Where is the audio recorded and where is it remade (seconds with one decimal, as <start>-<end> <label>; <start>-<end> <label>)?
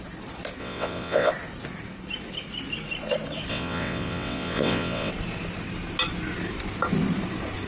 0.0-0.6 recorded; 0.6-1.3 remade; 1.3-3.5 recorded; 3.5-5.1 remade; 5.1-7.7 recorded